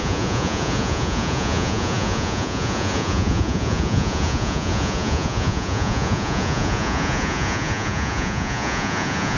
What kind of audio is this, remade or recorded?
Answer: remade